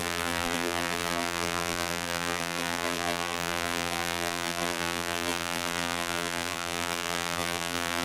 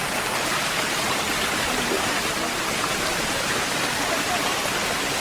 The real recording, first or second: second